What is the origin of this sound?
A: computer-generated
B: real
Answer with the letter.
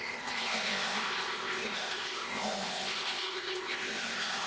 A